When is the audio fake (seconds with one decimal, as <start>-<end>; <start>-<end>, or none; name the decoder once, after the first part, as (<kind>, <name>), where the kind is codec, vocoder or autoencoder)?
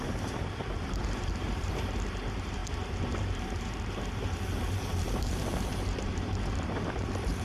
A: 0.0-7.4 (vocoder, BigVGAN v2)